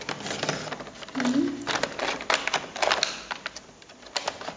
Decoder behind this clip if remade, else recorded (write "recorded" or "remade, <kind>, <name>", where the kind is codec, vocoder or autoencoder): recorded